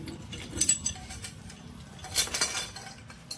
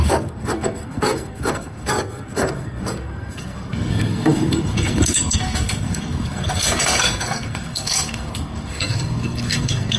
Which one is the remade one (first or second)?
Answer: second